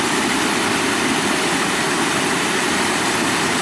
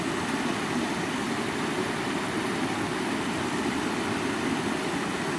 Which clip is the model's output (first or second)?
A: first